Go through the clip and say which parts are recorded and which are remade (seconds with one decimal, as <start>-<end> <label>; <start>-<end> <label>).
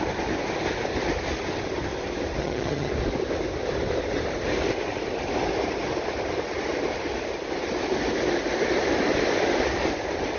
0.0-2.4 recorded; 2.4-2.9 remade; 2.9-10.4 recorded